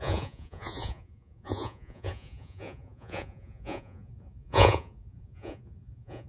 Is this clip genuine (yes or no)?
no